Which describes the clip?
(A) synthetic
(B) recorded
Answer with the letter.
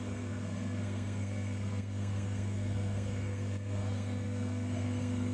A